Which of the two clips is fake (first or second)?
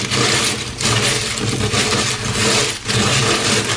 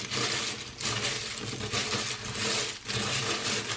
first